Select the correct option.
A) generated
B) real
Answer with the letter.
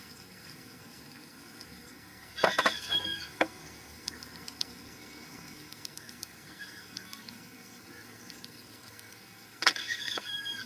A